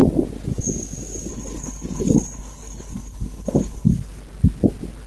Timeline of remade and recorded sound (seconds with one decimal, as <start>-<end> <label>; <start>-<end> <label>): 0.0-1.3 recorded; 1.3-3.9 remade; 3.9-5.1 recorded